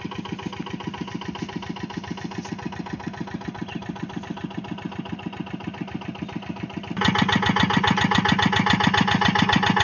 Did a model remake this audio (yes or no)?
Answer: no